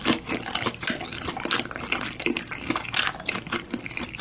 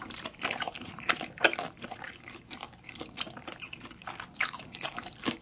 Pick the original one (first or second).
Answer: first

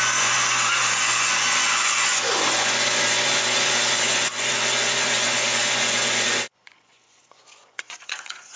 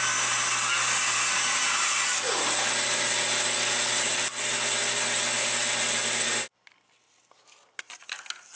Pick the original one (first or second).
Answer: second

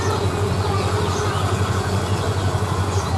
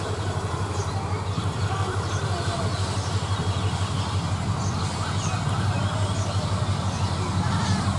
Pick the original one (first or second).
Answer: second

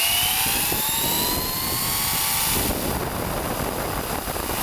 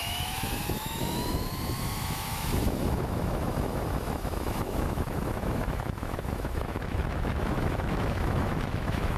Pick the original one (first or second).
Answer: first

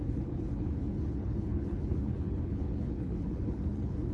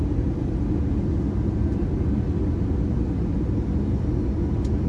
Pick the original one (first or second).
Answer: second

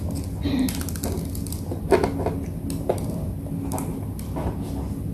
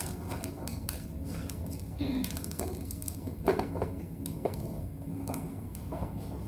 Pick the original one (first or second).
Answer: first